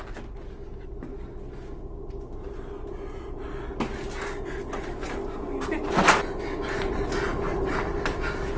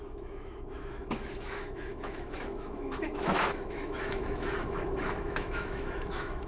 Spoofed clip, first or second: second